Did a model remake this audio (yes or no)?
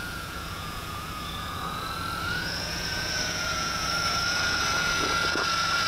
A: yes